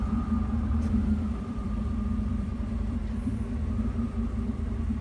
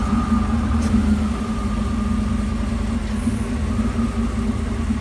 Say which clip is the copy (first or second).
first